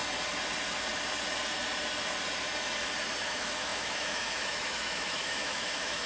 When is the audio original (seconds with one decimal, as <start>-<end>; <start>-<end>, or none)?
0.0-3.2